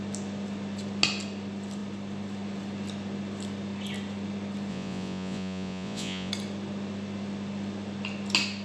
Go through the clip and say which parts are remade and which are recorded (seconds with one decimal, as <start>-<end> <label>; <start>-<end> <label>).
0.0-4.7 recorded; 4.7-6.3 remade; 6.3-8.6 recorded